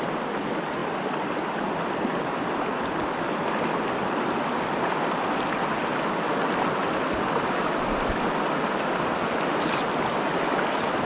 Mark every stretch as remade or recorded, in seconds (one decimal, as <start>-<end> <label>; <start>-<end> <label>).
0.0-11.1 recorded